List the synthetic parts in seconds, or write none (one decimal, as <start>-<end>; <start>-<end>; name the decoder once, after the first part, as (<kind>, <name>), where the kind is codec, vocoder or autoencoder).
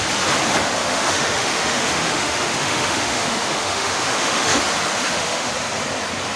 0.8-4.6 (autoencoder, DAC-VAE); 5.0-5.5